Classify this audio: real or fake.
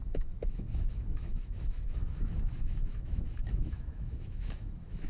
fake